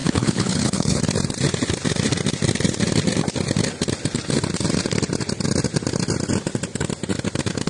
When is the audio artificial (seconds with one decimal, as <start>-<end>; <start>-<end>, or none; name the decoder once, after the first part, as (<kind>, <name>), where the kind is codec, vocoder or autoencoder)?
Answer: 0.0-1.0 (codec, HILCodec)